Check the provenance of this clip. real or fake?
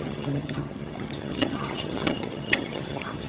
fake